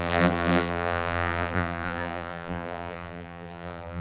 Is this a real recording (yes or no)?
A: no